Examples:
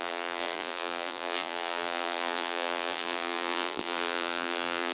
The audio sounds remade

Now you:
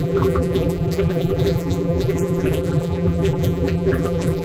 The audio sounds remade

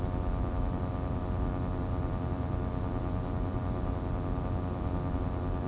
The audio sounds recorded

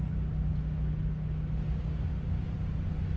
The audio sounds recorded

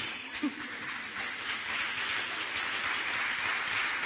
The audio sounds recorded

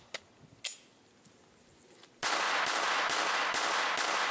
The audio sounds recorded